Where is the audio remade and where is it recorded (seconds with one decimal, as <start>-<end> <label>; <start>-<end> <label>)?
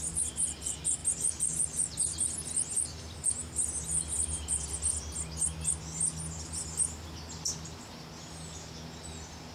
0.0-9.5 recorded